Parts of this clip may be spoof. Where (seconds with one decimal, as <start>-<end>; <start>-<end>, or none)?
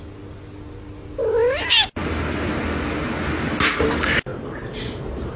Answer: 4.3-5.4